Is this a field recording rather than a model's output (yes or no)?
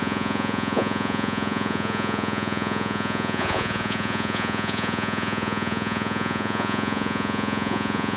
no